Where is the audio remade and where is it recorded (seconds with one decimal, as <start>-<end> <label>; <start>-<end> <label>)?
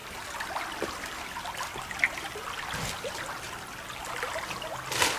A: 0.0-5.2 recorded